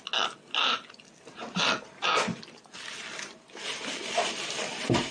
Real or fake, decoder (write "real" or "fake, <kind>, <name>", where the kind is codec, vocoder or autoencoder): real